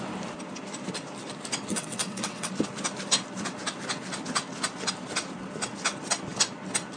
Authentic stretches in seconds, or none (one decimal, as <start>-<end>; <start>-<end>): 0.0-1.7; 2.5-7.0